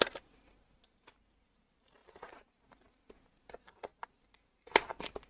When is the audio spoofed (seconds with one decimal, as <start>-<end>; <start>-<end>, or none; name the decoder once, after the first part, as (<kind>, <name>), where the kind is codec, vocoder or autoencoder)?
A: 2.0-2.5 (vocoder, BigVGAN v2)